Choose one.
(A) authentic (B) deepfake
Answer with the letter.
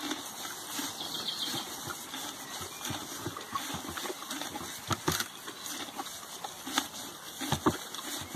A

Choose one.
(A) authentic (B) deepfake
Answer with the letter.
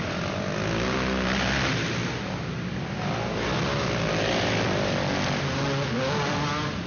A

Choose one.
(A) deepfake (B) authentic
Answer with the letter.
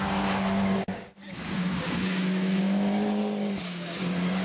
A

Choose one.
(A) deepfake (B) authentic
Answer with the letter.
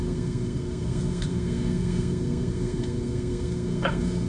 A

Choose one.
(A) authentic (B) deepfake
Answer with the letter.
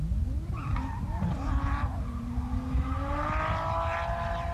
A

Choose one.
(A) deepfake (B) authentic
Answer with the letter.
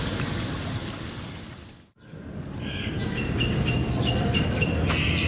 A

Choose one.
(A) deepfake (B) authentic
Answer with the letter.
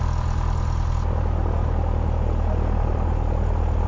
B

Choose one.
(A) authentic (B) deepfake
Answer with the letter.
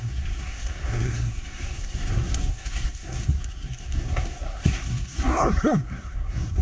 B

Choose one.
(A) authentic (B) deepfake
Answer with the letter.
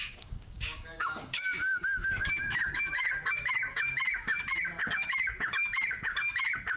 B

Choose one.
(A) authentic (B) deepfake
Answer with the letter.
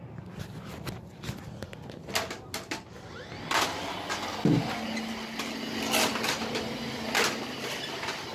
A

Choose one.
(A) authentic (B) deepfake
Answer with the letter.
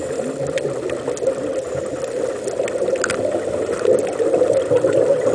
A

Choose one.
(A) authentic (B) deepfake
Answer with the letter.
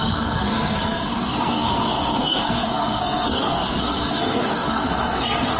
B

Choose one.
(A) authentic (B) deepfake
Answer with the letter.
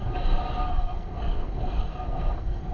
B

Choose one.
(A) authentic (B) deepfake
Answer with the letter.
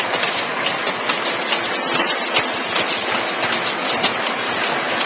A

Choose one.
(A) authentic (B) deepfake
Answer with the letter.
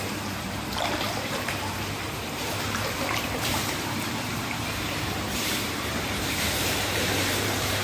B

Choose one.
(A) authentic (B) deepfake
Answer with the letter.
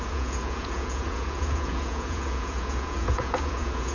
B